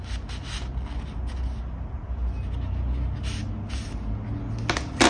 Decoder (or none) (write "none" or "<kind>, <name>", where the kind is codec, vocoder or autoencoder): none